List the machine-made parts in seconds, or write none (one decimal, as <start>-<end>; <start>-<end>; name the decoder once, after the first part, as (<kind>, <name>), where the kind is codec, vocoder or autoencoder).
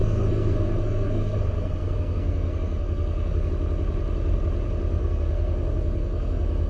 0.0-3.5 (codec, SNAC); 5.0-6.7